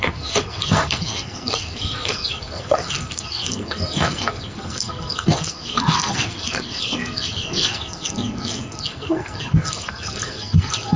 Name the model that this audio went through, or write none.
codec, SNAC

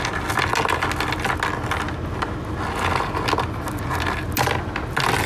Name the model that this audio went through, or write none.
none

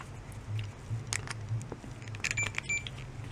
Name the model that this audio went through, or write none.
none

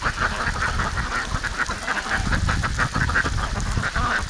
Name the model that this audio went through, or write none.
none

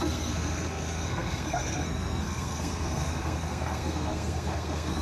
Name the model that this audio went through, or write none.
codec, SNAC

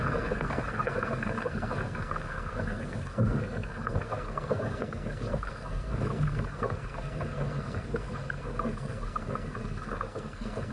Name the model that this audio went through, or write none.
codec, SNAC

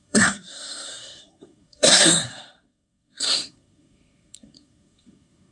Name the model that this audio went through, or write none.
codec, SNAC